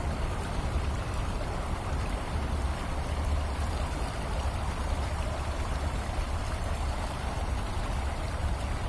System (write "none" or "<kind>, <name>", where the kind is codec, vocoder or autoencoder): vocoder, BigVGAN v2